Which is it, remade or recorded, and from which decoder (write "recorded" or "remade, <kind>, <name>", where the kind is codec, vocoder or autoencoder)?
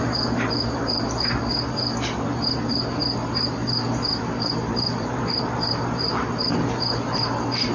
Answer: remade, vocoder, BigVGAN v2